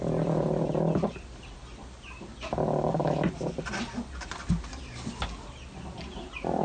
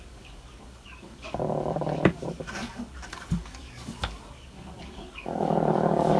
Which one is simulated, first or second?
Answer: second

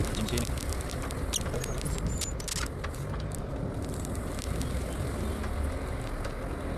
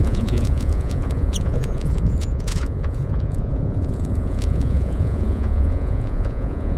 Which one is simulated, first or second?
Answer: second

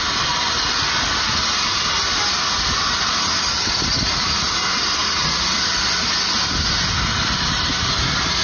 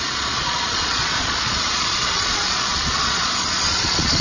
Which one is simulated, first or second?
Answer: second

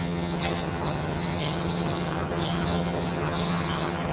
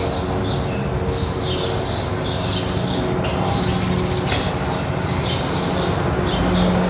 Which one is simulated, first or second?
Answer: first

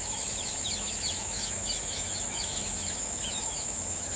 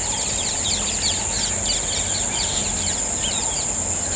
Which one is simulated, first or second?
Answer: first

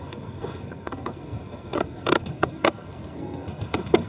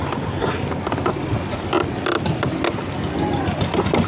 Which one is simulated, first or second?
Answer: first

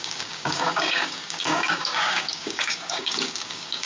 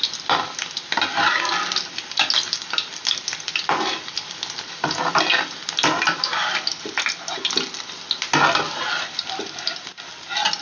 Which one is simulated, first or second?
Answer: first